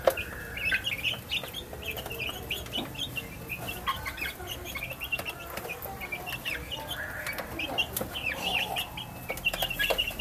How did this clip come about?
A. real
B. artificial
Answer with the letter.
A